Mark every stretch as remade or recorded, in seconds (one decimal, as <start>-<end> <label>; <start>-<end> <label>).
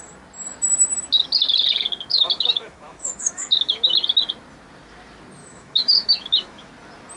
0.0-2.1 recorded; 2.1-4.0 remade; 4.0-5.4 recorded; 5.4-6.7 remade; 6.7-7.2 recorded